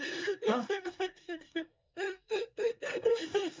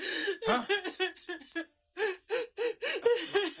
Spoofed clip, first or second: first